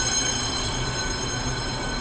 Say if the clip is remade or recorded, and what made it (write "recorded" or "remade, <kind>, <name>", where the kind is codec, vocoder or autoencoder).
remade, vocoder, BigVGAN v2